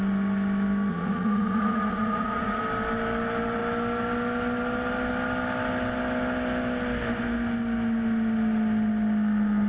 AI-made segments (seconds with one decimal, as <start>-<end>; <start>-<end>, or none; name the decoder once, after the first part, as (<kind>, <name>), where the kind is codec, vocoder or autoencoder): 0.9-2.6 (vocoder, Vocos)